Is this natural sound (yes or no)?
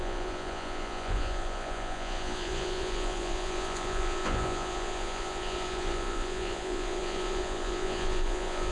no